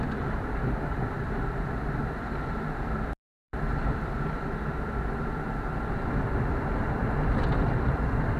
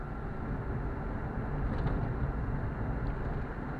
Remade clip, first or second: first